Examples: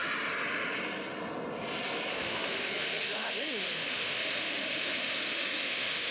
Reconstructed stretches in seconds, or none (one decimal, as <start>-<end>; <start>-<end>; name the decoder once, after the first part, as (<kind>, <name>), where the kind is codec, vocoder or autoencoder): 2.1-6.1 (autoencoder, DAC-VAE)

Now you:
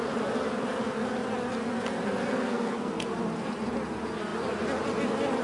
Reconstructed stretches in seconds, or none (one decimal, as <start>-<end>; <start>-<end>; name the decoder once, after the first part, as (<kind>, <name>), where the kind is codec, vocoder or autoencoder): 2.3-3.1 (codec, SNAC)

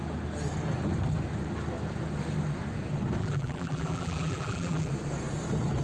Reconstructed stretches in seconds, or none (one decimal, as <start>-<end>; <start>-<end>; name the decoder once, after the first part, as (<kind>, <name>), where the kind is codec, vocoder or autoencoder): 3.2-4.9 (vocoder, BigVGAN v2)

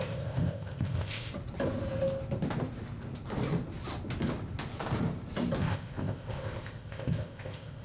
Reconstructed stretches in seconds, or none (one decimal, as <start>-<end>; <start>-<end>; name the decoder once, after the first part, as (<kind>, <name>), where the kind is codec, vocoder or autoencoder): 0.0-1.3 (codec, ZipCodec); 5.6-7.8